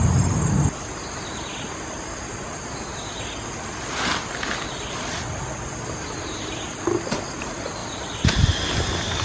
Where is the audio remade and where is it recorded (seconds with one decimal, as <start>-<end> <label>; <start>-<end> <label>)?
0.0-7.8 recorded; 7.8-9.2 remade